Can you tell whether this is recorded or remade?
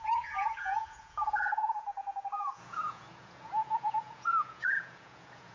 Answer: remade